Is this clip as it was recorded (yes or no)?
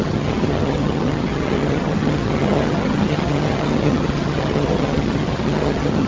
no